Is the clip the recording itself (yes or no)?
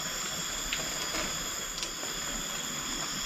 yes